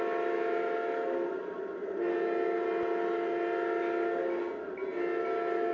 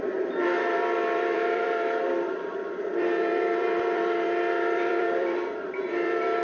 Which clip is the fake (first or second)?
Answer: second